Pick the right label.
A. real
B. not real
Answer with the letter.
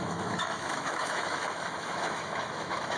B